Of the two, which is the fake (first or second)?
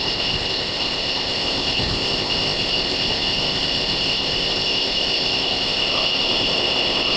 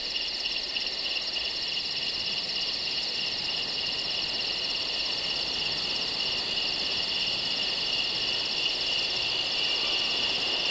first